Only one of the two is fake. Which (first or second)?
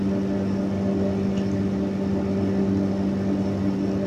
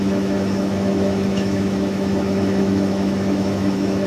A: second